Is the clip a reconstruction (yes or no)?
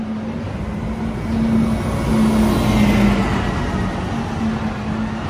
no